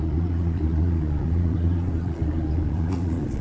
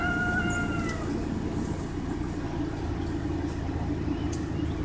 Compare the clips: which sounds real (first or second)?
second